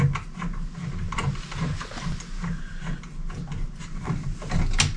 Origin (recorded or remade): recorded